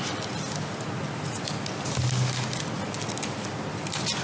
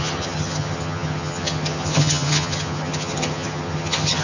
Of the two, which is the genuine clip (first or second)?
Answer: first